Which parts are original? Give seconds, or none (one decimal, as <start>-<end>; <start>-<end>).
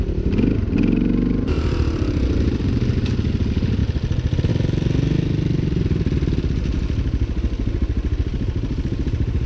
0.0-9.5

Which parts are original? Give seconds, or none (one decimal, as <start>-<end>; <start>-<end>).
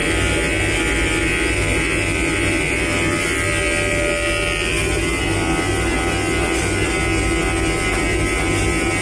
0.0-9.0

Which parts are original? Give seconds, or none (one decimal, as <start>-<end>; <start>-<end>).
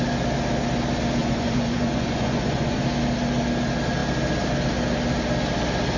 0.0-1.2; 2.8-6.0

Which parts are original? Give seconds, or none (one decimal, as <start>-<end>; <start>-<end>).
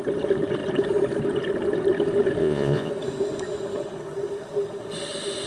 0.0-2.4; 2.9-5.5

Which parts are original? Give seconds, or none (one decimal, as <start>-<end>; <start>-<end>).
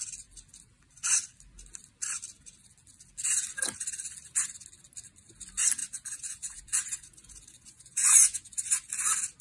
0.0-5.8; 8.9-9.4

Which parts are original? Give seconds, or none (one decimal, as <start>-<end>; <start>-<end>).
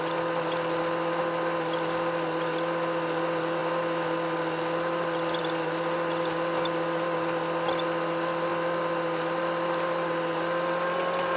0.0-11.4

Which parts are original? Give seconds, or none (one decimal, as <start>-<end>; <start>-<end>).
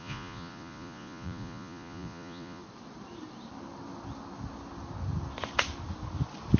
2.6-6.6